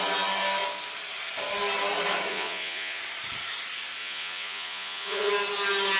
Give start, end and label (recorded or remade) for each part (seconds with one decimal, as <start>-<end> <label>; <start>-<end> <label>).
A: 0.0-2.3 recorded; 2.3-3.0 remade; 3.0-4.0 recorded; 4.0-5.3 remade; 5.3-6.0 recorded